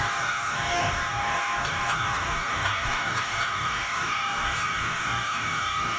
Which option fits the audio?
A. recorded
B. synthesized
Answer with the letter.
B